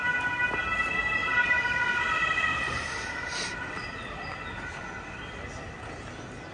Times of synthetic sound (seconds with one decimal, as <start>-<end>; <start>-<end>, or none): 1.2-4.4